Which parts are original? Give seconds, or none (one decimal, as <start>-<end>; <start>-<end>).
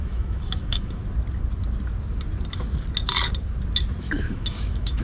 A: 1.0-4.0